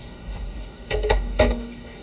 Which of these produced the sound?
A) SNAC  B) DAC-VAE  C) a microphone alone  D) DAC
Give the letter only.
D